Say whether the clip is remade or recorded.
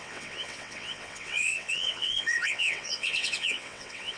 remade